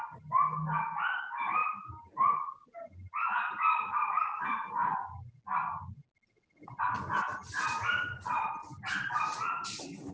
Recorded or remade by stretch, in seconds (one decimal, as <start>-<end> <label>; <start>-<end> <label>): 0.0-10.1 recorded